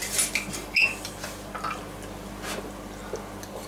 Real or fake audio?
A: real